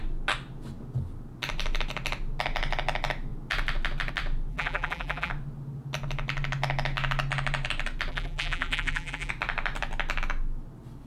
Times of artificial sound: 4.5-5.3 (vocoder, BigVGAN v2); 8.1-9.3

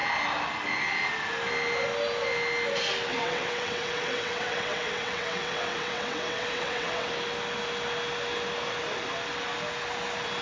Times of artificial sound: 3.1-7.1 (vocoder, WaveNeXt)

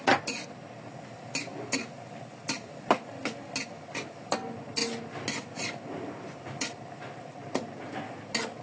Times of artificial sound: none

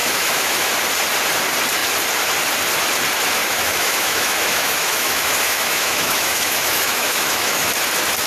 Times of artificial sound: 0.0-0.7 (autoencoder, DAC-VAE); 3.4-7.7

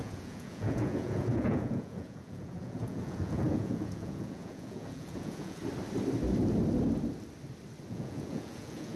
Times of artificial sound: 0.0-5.6 (vocoder, Vocos); 7.9-9.0

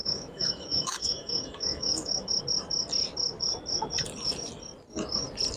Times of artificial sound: 0.0-2.4 (autoencoder, DAC-VAE)